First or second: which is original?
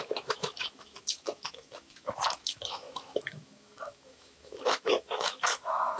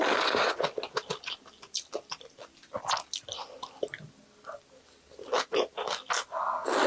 second